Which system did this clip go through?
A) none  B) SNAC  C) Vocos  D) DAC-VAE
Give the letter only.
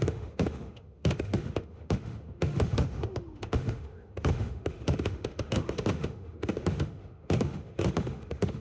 D